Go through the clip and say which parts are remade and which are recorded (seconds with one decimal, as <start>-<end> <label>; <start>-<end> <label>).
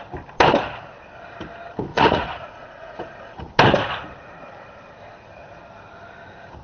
0.0-1.9 recorded; 1.9-3.5 remade; 3.5-6.6 recorded